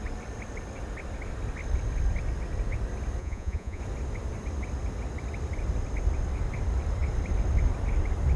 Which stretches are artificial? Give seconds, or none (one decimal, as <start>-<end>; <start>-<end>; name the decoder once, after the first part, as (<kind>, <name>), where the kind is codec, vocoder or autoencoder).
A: 3.2-3.8 (vocoder, Vocos)

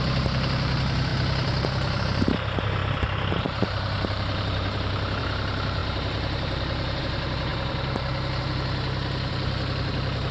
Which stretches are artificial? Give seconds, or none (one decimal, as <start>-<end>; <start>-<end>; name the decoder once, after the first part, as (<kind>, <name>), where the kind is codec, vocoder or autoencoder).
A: 0.0-1.1 (vocoder, BigVGAN v2); 2.0-2.8; 3.4-7.5; 8.4-10.3

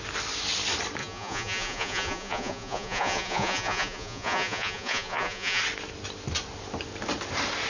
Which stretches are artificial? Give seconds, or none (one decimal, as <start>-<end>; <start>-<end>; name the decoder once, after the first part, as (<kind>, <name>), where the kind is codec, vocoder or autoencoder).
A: 1.0-5.6 (vocoder, Vocos)

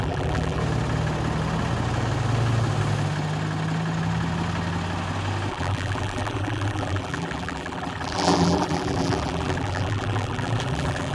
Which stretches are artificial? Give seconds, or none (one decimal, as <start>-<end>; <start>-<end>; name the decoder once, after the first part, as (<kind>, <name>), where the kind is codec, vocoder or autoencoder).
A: 0.0-0.6 (vocoder, BigVGAN v2); 5.5-11.1

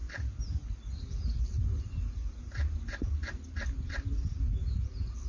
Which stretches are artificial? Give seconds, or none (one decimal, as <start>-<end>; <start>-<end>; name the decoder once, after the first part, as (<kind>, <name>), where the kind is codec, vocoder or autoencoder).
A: none

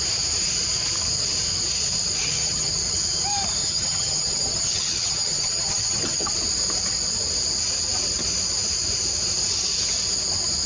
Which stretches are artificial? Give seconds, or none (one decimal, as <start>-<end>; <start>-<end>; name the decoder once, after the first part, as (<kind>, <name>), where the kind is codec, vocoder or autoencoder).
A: 2.2-2.7 (vocoder, HiFi-GAN); 3.6-6.3

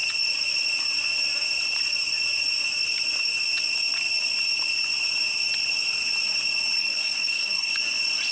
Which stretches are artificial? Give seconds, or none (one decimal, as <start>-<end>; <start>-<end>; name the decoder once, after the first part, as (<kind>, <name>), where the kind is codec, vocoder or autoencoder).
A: 6.8-7.7 (codec, SNAC)

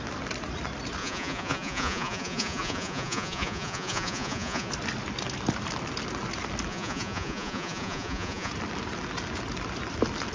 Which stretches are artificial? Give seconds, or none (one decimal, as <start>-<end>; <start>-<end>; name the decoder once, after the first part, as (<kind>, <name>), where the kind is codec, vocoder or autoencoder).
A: 1.0-4.7 (vocoder, Vocos); 6.7-8.5